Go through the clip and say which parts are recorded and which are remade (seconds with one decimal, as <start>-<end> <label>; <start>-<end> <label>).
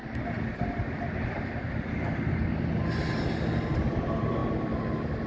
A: 0.0-5.3 recorded